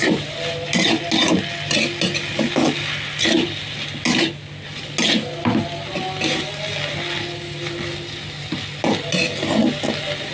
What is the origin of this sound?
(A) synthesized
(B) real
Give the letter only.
B